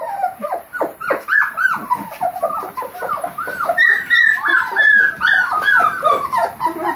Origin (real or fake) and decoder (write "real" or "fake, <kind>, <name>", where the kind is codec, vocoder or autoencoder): fake, vocoder, BigVGAN v2